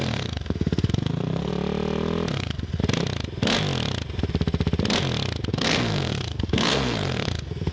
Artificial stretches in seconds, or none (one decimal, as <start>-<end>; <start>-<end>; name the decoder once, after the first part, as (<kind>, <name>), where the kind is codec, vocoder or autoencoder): 0.0-1.5 (codec, SNAC); 2.3-2.8; 5.5-7.7